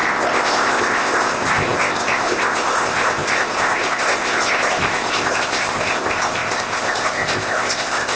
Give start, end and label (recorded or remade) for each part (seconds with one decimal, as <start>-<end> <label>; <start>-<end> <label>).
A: 0.0-8.2 remade